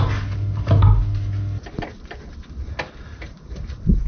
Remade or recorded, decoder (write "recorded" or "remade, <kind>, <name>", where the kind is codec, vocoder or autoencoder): recorded